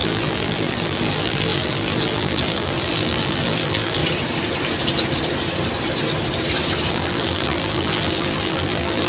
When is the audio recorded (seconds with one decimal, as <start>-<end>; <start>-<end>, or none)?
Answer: 4.0-6.9